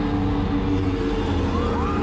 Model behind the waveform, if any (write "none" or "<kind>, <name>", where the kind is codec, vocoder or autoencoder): none